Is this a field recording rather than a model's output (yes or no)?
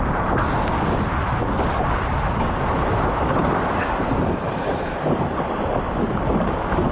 yes